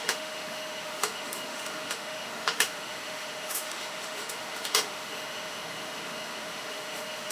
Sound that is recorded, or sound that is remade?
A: remade